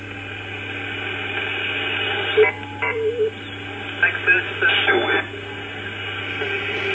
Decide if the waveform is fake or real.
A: real